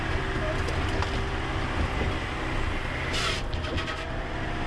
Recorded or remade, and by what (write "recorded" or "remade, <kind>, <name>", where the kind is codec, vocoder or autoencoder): recorded